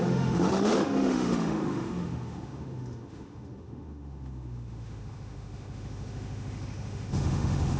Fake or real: fake